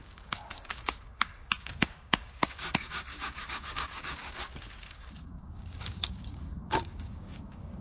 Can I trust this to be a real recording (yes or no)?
no